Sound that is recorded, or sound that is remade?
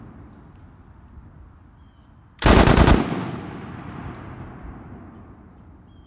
recorded